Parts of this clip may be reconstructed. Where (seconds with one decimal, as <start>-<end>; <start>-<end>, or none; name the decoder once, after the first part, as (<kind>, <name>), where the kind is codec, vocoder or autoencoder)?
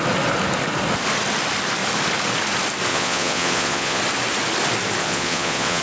2.9-4.0 (vocoder, Vocos); 5.0-5.8